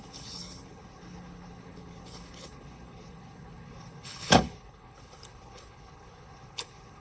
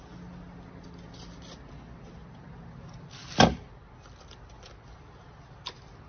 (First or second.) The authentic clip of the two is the second